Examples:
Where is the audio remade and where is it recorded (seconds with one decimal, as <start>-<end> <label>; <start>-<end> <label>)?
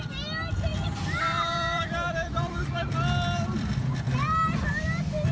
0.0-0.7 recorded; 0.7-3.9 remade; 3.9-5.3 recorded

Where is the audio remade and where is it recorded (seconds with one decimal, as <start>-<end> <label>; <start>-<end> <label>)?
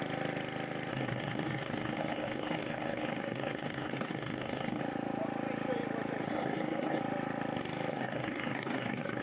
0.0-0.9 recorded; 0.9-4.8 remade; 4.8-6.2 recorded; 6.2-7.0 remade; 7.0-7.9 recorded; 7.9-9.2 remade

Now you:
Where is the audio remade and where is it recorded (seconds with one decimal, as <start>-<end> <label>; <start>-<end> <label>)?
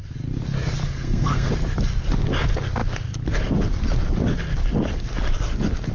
0.0-0.8 recorded; 0.8-1.5 remade; 1.5-5.9 recorded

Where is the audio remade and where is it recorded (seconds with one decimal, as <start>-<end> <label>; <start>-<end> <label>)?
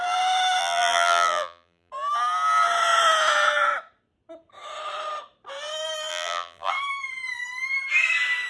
0.0-0.6 recorded; 0.6-1.9 remade; 1.9-6.1 recorded; 6.1-6.7 remade; 6.7-8.5 recorded